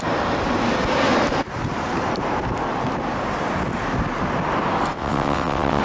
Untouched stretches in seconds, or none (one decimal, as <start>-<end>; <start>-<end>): 0.0-4.9